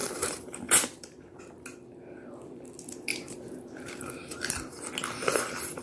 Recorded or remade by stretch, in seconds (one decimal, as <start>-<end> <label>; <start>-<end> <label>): 0.0-1.4 remade; 1.4-3.1 recorded; 3.1-4.5 remade; 4.5-5.8 recorded